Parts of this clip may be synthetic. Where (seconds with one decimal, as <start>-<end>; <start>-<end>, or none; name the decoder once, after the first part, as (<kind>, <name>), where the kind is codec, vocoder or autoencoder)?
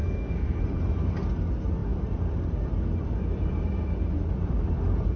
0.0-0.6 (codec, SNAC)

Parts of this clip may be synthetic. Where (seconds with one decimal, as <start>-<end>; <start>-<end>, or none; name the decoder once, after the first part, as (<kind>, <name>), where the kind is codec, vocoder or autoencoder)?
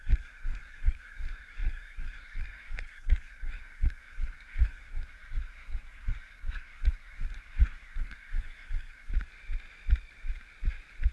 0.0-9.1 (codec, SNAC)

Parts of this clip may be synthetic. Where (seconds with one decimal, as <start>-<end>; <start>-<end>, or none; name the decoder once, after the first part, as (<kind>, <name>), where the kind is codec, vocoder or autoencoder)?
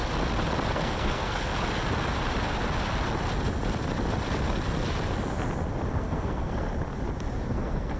0.7-1.5 (codec, SNAC); 5.9-6.7; 7.5-8.0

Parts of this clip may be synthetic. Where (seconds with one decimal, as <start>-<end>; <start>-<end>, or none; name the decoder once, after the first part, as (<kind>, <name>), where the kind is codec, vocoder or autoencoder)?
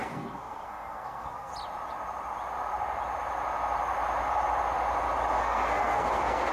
0.0-1.5 (codec, SNAC); 5.4-6.5